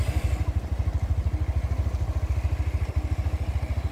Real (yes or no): yes